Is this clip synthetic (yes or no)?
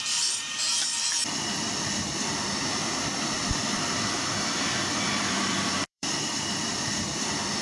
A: yes